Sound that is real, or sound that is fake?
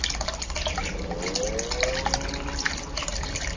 real